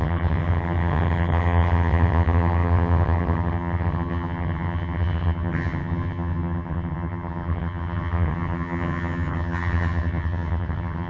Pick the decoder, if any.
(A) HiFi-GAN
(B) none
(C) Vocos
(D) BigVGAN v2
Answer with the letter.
A